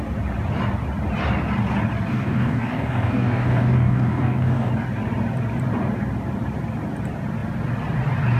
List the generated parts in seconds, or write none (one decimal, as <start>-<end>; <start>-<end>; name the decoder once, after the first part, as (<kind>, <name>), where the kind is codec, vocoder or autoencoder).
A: 2.1-4.7 (codec, DAC)